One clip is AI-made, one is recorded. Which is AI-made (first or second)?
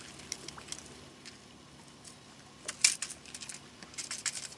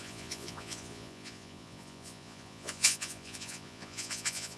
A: second